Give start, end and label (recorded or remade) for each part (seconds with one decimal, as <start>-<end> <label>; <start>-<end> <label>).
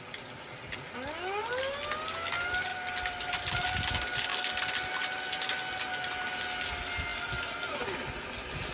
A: 0.0-8.7 recorded